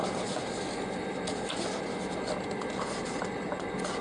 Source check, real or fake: real